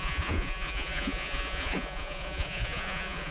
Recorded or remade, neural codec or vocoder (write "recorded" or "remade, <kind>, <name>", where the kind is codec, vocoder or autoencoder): remade, vocoder, Vocos